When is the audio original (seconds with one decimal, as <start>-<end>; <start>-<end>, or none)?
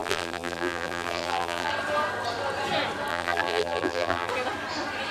1.7-3.1; 4.3-5.1